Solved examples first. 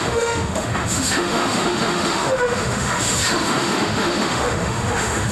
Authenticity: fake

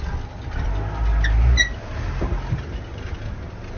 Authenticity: real